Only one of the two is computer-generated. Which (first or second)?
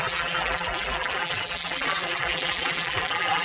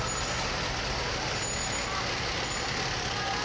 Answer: first